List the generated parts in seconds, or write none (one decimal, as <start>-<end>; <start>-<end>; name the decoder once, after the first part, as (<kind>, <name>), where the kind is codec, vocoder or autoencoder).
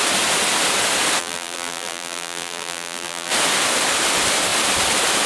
1.2-3.3 (vocoder, BigVGAN v2)